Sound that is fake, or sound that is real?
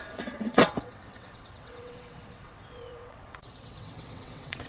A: fake